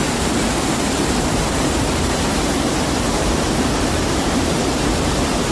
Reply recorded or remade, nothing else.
remade